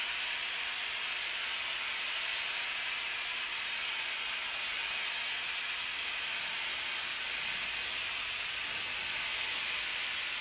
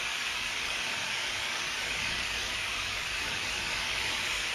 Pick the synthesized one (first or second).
second